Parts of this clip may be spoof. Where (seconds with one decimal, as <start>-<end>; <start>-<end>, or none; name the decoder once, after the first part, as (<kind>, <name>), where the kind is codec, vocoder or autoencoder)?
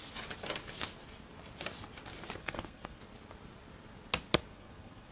2.4-3.0 (codec, SNAC); 4.5-5.1